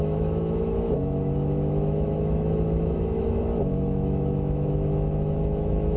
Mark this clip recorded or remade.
remade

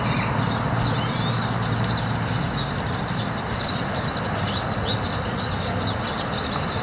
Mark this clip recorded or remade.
recorded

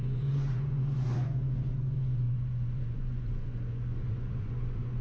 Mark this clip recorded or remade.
remade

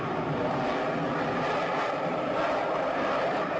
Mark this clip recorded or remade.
recorded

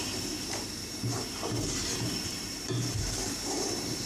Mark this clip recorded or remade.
remade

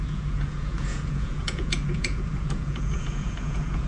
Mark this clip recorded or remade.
remade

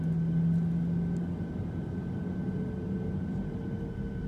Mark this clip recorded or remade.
recorded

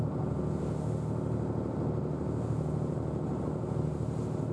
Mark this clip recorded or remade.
recorded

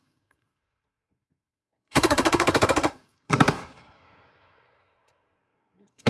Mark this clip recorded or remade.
remade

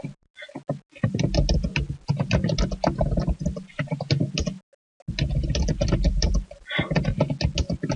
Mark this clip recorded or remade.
recorded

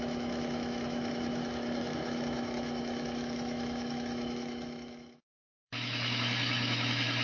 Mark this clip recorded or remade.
remade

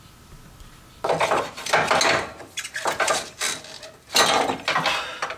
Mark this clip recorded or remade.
recorded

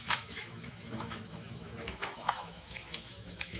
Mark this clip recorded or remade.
remade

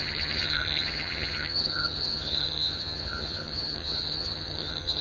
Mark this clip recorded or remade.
remade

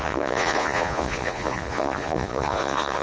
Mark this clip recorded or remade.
remade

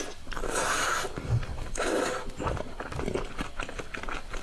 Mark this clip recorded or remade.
recorded